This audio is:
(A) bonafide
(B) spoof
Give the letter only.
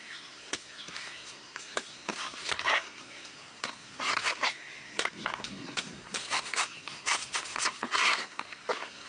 B